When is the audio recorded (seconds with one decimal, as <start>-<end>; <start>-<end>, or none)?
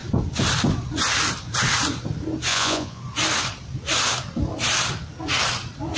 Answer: 0.0-2.5; 3.0-6.0